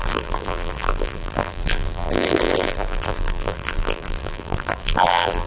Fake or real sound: fake